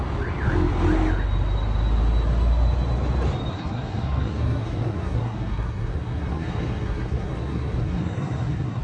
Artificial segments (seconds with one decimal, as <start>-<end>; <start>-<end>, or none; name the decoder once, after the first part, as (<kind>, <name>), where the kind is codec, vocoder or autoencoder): 3.5-8.8 (codec, SNAC)